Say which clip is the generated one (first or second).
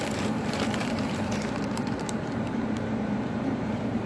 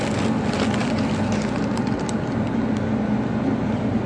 first